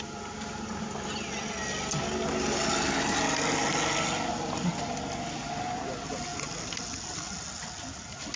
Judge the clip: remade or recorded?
recorded